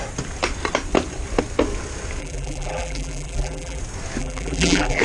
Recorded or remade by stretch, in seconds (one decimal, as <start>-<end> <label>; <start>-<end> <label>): 0.0-2.2 recorded; 2.2-3.8 remade; 3.8-4.2 recorded; 4.2-5.0 remade